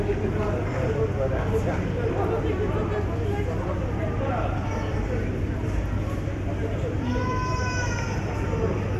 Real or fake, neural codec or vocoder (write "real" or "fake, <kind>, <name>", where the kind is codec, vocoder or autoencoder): real